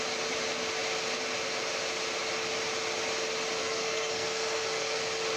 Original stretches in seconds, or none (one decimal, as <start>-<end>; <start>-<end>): 0.0-3.6; 5.0-5.4